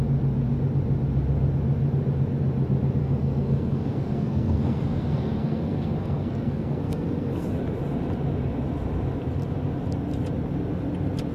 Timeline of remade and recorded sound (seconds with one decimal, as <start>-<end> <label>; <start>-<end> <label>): 0.0-3.0 recorded; 3.0-7.5 remade; 7.5-11.3 recorded